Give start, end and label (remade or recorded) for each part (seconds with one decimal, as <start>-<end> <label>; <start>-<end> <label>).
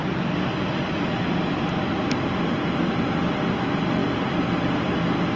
0.0-5.4 recorded